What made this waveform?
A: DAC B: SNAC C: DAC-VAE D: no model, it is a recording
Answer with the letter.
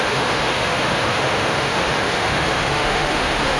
C